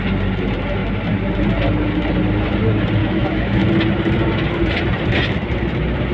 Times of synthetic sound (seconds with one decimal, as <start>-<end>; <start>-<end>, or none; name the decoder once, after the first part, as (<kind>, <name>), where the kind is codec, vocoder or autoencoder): 3.0-3.7 (autoencoder, DAC-VAE)